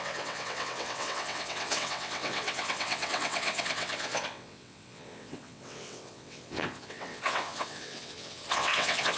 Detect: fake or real fake